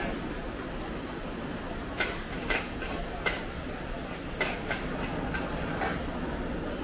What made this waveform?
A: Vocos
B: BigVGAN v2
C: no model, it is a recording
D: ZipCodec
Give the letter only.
C